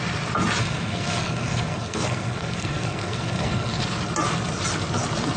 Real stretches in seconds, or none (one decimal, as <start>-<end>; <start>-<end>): 0.0-0.6; 3.8-5.4